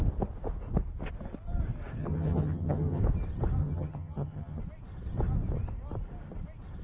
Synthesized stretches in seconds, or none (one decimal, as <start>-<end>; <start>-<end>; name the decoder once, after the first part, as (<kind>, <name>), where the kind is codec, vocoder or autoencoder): 2.0-3.0 (vocoder, HiFi-GAN); 3.6-4.6